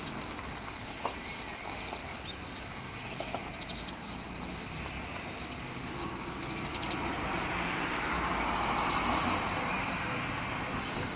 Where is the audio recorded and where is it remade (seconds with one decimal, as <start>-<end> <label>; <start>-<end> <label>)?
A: 0.0-6.7 recorded; 6.7-8.3 remade; 8.3-11.2 recorded